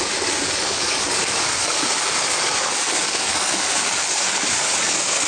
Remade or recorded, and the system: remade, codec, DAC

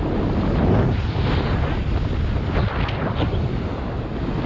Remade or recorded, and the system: recorded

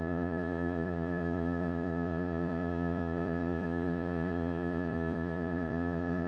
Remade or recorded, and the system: remade, vocoder, Vocos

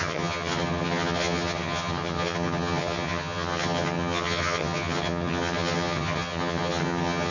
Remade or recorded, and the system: remade, vocoder, HiFi-GAN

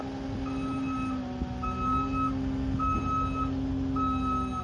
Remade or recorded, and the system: recorded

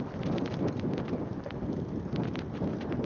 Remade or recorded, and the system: remade, vocoder, BigVGAN v2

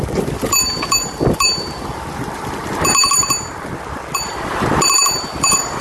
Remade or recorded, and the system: remade, vocoder, BigVGAN v2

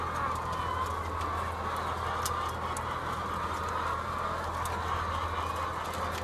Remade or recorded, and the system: recorded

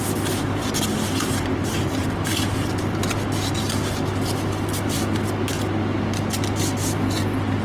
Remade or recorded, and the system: recorded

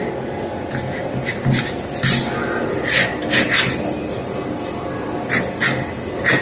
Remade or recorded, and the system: recorded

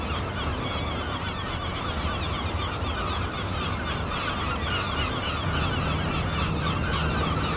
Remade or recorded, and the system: recorded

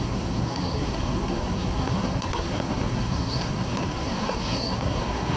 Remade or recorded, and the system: remade, codec, SNAC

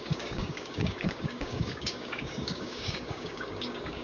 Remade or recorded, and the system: remade, codec, DAC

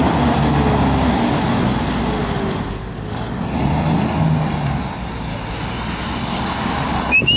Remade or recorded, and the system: recorded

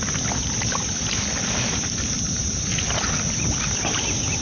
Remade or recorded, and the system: recorded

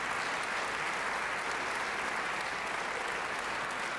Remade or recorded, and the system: recorded